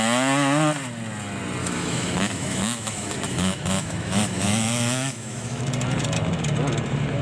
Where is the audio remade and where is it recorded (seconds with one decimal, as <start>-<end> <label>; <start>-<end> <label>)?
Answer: 0.0-1.6 recorded; 1.6-5.6 remade; 5.6-7.2 recorded